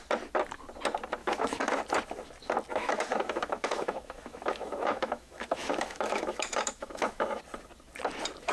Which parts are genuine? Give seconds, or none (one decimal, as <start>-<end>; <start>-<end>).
0.0-1.2; 1.8-2.7; 7.4-8.5